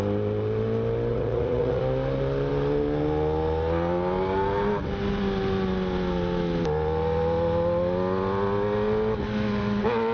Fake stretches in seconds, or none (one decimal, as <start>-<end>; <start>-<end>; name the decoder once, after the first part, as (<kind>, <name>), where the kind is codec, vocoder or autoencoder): 1.1-1.8 (vocoder, Vocos)